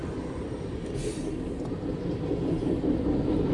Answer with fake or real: real